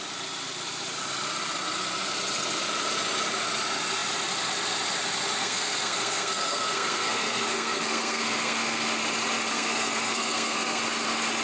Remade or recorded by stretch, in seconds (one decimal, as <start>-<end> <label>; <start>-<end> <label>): 0.0-5.4 recorded; 5.4-9.0 remade; 9.0-9.5 recorded; 9.5-10.8 remade; 10.8-11.4 recorded